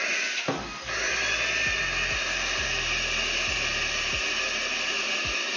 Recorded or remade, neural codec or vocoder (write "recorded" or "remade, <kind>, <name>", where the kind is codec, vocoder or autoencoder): recorded